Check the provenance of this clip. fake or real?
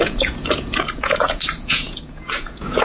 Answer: fake